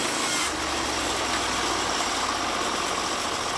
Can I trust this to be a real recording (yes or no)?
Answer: yes